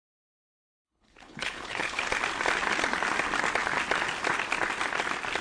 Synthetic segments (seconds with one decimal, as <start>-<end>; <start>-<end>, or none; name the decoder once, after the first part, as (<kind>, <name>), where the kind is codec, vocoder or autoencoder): 0.8-2.0 (codec, HILCodec)